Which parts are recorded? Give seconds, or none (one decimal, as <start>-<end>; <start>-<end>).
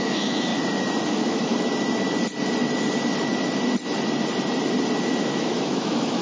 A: 0.5-1.1; 1.5-5.2